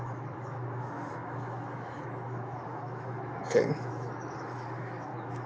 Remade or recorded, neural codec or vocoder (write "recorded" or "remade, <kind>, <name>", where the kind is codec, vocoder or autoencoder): remade, autoencoder, DAC-VAE